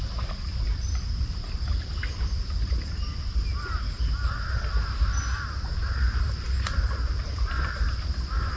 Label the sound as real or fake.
real